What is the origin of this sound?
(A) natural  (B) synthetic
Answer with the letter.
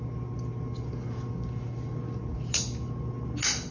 A